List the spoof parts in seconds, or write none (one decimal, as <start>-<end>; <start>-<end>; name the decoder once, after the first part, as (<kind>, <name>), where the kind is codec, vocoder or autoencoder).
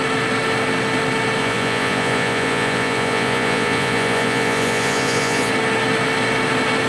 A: 1.4-5.5 (vocoder, Vocos)